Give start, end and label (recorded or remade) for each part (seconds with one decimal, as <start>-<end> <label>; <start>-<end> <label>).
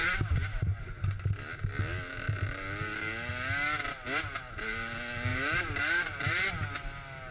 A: 0.0-0.8 remade; 0.8-5.3 recorded; 5.3-6.5 remade; 6.5-7.3 recorded